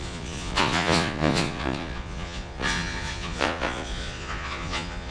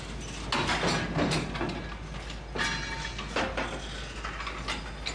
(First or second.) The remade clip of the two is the first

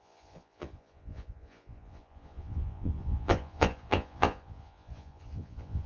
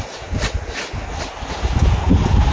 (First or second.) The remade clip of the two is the first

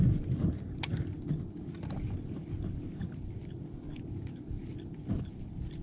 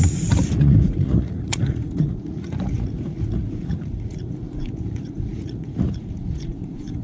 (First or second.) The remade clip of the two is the second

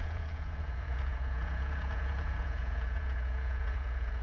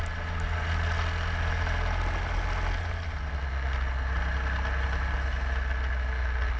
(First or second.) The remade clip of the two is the first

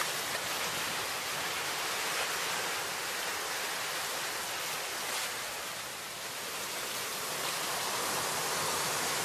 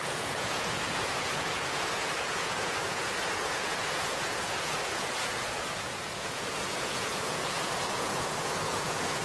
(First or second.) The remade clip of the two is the second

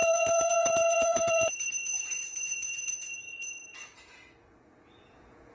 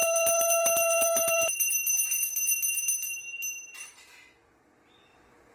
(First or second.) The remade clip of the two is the first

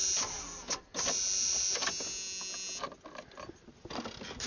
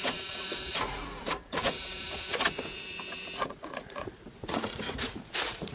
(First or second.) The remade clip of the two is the second